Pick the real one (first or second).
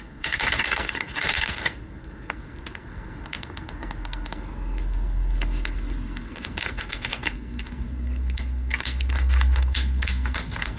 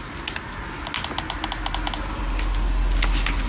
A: second